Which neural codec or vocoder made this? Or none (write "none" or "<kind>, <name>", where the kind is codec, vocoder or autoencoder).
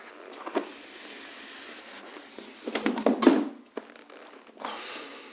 none